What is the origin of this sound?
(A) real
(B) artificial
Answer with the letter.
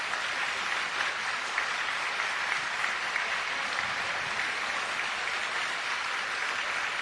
A